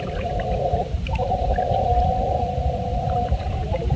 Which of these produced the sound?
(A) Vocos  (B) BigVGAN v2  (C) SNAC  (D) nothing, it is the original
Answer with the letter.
B